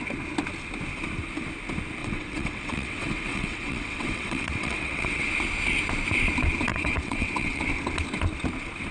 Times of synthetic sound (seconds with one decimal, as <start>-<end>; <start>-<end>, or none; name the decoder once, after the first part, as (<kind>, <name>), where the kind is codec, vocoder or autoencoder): 2.0-5.3 (vocoder, WaveNeXt); 6.7-7.6